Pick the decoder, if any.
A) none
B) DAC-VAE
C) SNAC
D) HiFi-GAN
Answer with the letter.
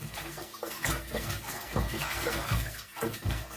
C